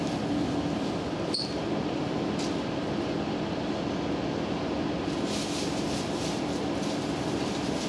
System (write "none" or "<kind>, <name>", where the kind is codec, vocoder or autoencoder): none